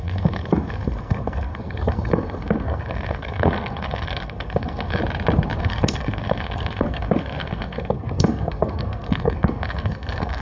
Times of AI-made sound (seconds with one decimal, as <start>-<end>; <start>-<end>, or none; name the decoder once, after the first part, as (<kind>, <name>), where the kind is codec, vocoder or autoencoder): 0.0-5.0 (codec, SNAC); 5.6-10.4